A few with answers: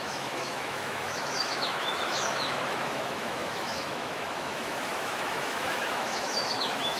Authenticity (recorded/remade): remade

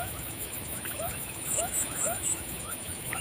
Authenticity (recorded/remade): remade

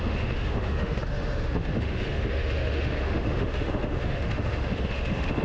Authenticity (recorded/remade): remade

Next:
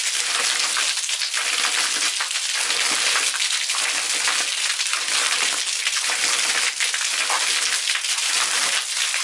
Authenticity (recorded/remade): recorded